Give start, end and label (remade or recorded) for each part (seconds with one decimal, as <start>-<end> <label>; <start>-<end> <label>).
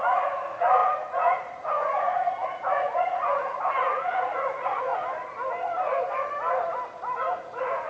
0.0-4.9 remade; 4.9-7.4 recorded; 7.4-7.9 remade